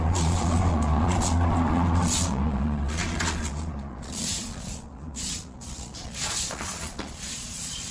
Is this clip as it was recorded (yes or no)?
no